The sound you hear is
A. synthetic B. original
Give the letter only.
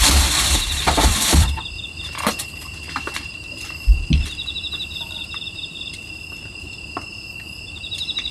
A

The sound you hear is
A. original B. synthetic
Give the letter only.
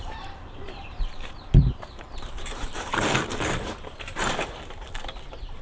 B